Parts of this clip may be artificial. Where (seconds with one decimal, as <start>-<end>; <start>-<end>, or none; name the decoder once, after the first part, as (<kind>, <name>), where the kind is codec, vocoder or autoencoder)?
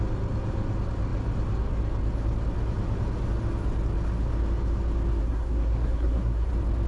5.2-6.5 (codec, SNAC)